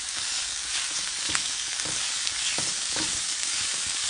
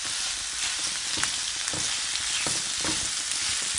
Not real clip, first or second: first